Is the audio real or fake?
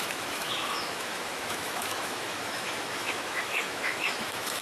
fake